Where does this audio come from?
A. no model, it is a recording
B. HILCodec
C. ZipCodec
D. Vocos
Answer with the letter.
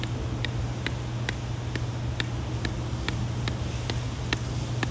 A